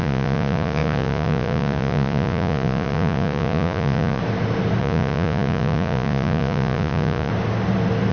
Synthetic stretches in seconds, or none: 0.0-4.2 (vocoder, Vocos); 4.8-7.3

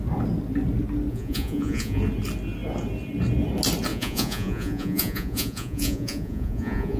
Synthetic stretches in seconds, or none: 1.1-2.0 (vocoder, Vocos); 3.9-7.0

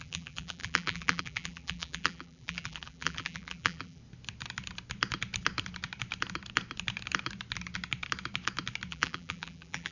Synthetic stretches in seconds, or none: 0.0-4.0 (vocoder, BigVGAN v2); 8.9-9.9